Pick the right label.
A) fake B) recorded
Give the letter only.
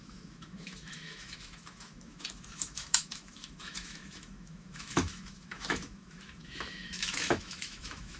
A